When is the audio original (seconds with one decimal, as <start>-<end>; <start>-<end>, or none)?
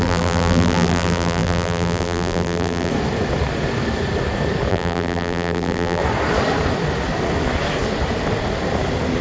2.9-4.7; 6.0-9.2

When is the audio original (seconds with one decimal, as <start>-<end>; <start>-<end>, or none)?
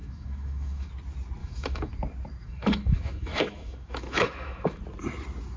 0.9-1.4; 1.9-2.4; 4.8-5.6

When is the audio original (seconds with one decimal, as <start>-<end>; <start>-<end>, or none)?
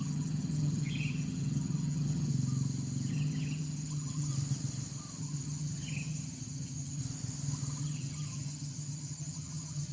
2.3-3.1; 4.3-5.2; 7.0-7.8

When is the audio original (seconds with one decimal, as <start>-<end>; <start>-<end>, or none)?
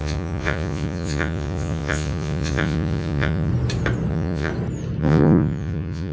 3.5-4.1; 4.5-5.0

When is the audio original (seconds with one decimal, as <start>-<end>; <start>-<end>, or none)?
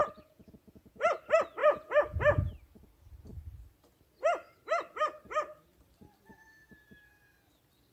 1.2-1.6; 2.5-7.9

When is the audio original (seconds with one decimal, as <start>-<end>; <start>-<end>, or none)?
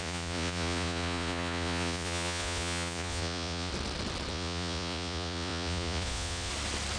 3.7-4.3; 6.5-7.0